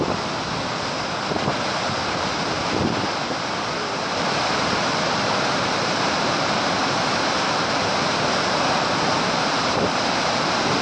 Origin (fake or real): fake